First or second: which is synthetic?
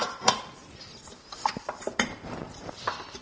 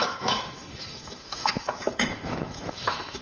second